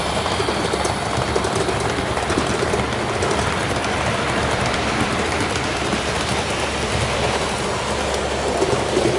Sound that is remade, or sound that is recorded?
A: remade